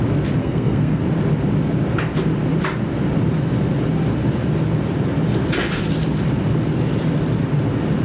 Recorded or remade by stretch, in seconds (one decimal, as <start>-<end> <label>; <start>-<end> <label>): 0.0-0.4 recorded; 0.4-1.0 remade; 1.0-8.0 recorded